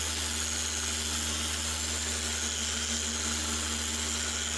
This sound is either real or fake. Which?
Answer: real